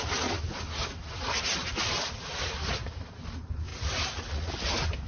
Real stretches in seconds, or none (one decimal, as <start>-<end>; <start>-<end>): 0.0-3.7; 4.5-5.1